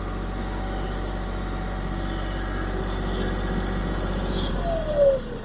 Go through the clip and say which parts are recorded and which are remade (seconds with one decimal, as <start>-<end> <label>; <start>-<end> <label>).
0.0-3.8 recorded; 3.8-4.5 remade; 4.5-5.4 recorded